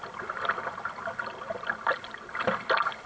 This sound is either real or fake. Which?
real